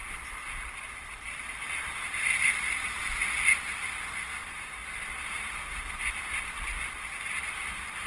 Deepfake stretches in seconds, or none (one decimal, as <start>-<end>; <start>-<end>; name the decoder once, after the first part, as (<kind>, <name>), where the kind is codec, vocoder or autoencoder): none